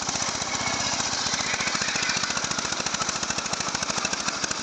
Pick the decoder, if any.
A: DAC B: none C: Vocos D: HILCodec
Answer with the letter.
B